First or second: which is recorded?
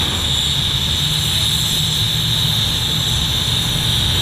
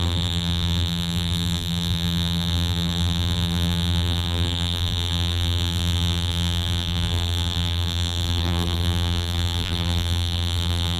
first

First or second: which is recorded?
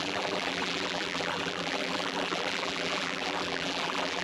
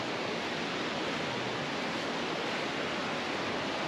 second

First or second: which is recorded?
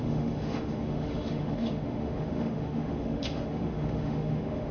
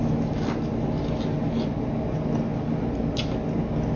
second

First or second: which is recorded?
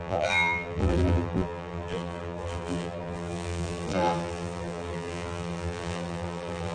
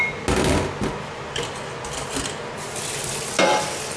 second